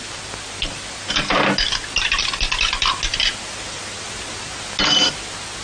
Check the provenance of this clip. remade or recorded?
recorded